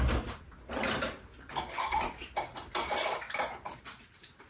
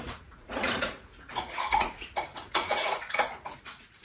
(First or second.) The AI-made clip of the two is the second